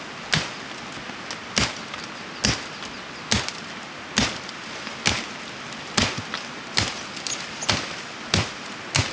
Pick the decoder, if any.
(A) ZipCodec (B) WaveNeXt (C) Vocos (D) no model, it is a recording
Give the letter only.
D